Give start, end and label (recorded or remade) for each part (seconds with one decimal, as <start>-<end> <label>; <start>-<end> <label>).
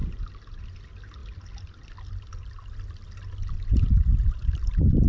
0.0-5.1 recorded